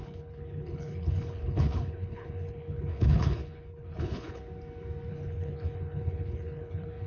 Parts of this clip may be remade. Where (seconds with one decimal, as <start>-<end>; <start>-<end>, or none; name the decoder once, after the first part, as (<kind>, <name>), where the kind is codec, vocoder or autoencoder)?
0.0-4.4 (codec, HILCodec); 5.1-7.1